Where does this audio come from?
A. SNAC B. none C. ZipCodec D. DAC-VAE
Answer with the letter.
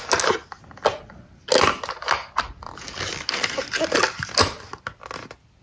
B